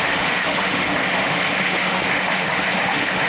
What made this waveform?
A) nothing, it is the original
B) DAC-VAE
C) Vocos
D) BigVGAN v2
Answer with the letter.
B